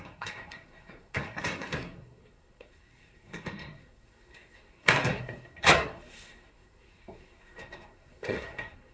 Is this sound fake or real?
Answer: fake